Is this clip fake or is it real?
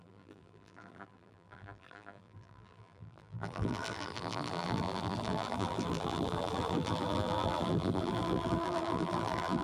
fake